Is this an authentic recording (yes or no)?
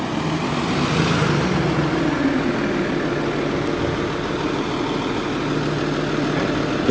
yes